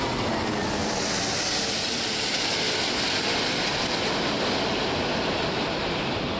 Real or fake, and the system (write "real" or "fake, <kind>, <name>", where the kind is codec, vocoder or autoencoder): real